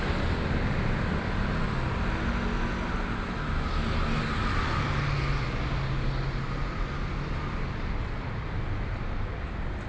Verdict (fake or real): real